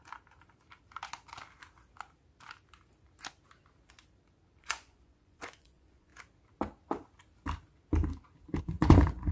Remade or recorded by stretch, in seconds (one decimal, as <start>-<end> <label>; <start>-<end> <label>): 0.0-4.6 recorded; 4.6-6.1 remade; 6.1-8.6 recorded; 8.6-9.3 remade